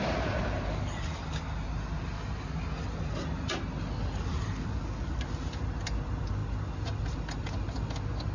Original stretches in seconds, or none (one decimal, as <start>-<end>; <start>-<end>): 0.0-8.3